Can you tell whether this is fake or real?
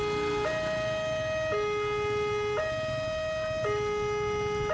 real